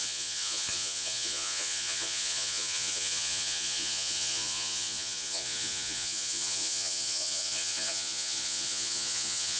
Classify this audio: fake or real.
fake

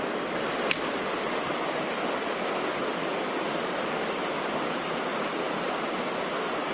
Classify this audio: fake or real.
real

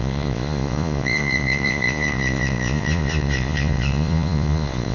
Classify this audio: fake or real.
fake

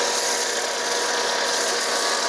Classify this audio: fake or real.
real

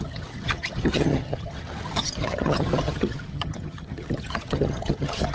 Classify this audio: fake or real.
fake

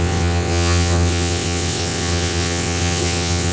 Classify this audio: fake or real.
fake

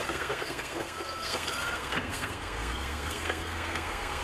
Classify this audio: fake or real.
fake